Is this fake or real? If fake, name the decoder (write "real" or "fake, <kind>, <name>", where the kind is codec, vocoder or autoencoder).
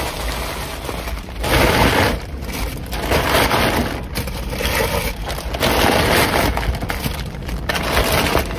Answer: real